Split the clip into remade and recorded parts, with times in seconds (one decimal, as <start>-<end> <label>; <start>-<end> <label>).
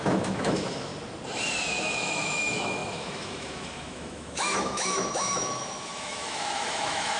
0.0-0.9 remade; 0.9-1.7 recorded; 1.7-7.2 remade